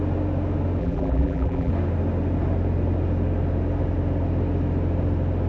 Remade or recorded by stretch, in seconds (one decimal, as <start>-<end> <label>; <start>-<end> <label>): 0.0-0.8 recorded; 0.8-1.7 remade; 1.7-5.5 recorded